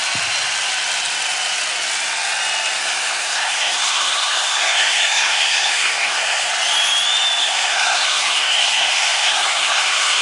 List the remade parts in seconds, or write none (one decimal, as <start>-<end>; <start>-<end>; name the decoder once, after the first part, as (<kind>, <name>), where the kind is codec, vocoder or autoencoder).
2.8-6.5 (codec, SNAC); 7.4-10.2